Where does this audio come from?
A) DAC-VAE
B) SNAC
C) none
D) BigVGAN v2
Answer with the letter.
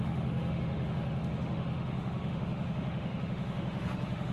A